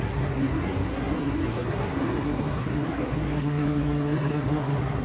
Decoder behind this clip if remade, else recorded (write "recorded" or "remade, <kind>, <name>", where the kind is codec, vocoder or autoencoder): remade, codec, SNAC